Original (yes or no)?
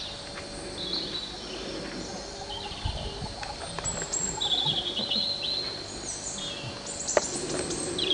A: yes